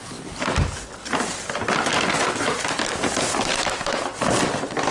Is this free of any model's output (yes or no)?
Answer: yes